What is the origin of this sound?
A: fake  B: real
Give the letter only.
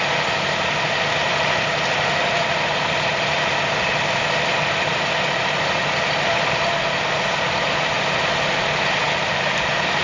B